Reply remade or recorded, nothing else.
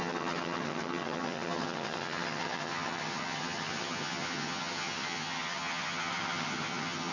remade